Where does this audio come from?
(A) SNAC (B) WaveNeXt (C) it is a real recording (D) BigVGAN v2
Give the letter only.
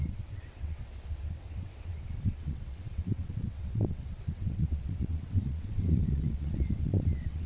B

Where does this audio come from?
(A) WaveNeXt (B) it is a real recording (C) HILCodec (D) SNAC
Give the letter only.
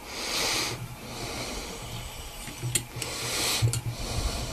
B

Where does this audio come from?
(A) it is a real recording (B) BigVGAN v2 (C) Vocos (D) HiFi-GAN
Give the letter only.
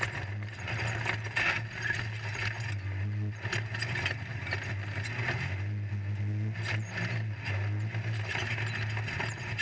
A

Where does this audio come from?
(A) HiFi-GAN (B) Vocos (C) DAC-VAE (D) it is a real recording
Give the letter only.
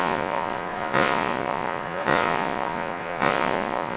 B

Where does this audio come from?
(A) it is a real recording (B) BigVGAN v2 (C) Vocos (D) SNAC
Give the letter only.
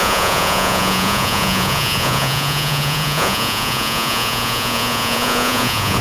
C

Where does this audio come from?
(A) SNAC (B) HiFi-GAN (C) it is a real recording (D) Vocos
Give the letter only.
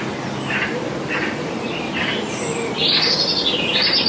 C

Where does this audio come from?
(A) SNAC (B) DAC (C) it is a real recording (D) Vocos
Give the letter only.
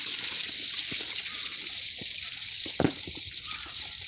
C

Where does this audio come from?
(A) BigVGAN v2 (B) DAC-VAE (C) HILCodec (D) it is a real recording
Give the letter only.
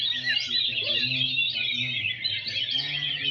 D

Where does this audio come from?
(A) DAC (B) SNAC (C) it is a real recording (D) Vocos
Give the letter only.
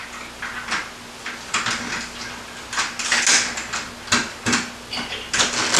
C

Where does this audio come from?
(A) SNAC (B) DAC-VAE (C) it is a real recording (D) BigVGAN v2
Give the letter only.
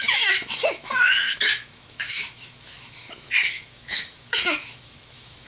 B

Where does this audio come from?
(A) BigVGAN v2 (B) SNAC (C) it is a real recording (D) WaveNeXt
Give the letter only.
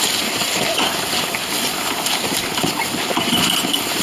C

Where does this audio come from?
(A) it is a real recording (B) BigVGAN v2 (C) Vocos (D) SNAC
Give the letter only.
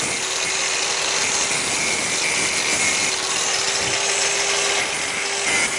A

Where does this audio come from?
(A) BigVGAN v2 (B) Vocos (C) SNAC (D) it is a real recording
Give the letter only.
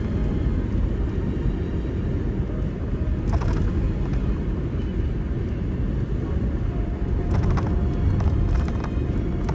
D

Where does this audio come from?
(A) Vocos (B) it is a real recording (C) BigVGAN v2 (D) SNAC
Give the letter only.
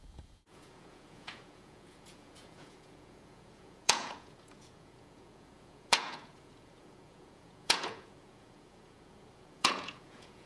A